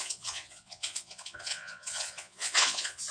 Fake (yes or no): yes